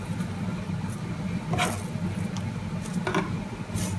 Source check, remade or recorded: recorded